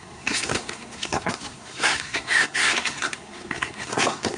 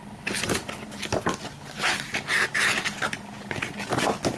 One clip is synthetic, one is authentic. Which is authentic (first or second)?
second